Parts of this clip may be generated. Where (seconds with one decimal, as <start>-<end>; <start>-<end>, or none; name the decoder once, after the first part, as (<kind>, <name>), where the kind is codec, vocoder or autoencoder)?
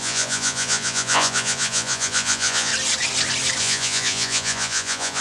0.0-2.7 (vocoder, Vocos); 3.6-5.2